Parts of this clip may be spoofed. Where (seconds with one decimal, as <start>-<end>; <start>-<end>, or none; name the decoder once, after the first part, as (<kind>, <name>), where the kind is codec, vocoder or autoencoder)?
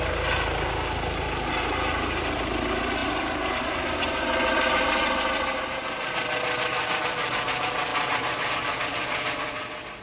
none